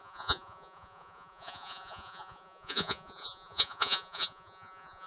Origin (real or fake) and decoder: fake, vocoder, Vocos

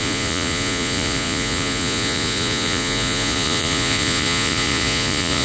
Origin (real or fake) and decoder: fake, vocoder, Vocos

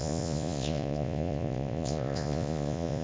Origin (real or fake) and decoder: fake, vocoder, Vocos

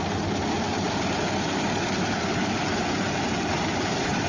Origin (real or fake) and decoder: real